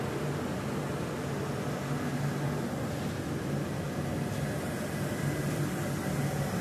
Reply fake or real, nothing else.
real